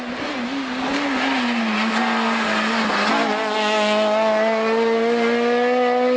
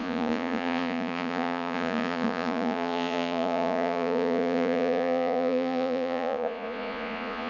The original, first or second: first